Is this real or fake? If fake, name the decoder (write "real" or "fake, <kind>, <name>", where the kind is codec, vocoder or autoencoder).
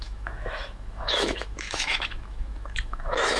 fake, autoencoder, DAC-VAE